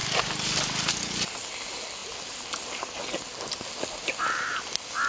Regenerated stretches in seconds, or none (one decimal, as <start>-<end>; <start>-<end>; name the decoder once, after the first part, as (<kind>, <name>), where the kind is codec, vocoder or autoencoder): none